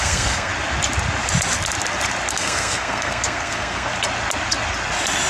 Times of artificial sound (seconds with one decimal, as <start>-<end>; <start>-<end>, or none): 0.0-0.5; 2.3-3.9